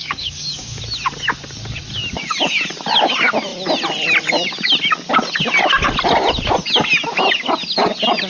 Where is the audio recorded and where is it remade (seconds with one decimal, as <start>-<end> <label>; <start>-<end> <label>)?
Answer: 0.0-0.8 remade; 0.8-8.3 recorded